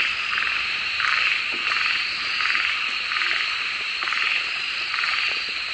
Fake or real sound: real